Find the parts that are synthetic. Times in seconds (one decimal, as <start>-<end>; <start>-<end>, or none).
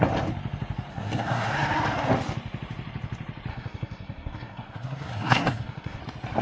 0.9-1.5; 3.5-6.0